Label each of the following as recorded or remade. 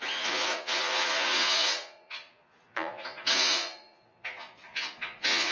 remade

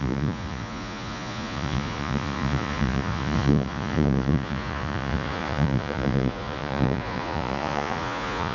remade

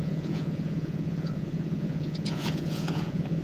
remade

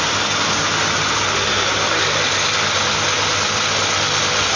recorded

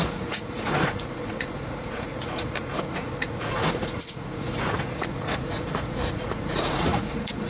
remade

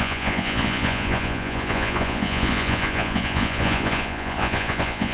remade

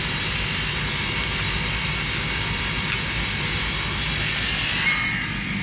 recorded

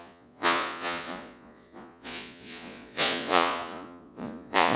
remade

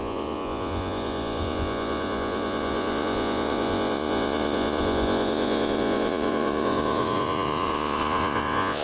remade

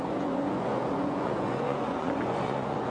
remade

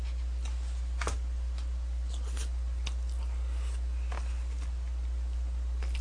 recorded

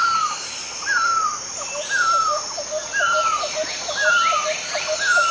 recorded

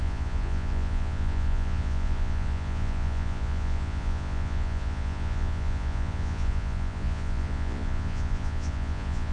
remade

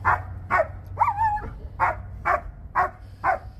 recorded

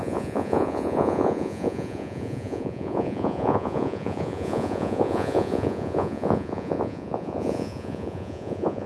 remade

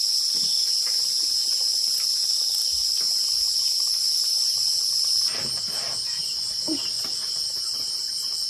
recorded